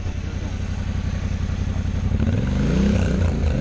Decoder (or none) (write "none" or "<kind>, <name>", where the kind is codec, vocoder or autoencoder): none